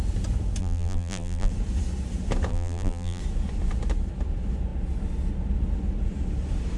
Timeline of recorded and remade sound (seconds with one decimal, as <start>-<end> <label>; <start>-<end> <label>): 0.0-0.6 recorded; 0.6-1.5 remade; 1.5-2.5 recorded; 2.5-3.2 remade; 3.2-6.8 recorded